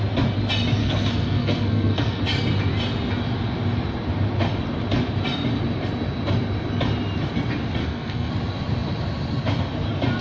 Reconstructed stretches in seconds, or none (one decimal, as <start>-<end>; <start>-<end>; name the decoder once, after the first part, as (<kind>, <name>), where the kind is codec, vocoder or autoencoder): 0.8-2.2 (codec, SNAC); 7.8-8.3